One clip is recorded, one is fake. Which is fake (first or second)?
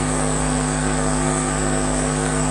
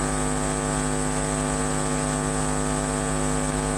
first